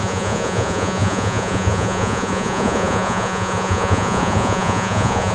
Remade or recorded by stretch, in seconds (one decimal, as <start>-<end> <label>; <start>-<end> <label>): 0.0-5.3 remade